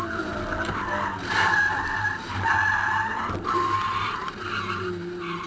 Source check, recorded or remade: recorded